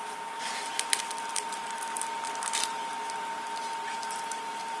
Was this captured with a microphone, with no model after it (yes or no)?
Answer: yes